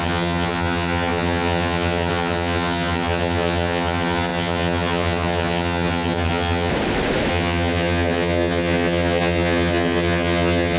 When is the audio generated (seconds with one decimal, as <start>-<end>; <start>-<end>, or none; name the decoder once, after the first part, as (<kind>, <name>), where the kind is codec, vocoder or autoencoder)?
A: 0.0-6.7 (vocoder, HiFi-GAN); 7.3-10.8